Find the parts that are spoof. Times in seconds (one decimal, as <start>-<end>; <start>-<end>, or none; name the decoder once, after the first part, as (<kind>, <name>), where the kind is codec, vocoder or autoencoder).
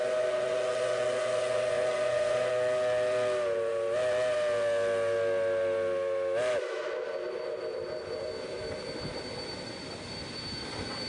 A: 0.0-2.5 (vocoder, Vocos)